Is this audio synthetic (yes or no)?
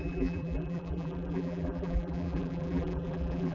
yes